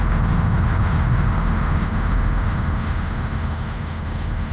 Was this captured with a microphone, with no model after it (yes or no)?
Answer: no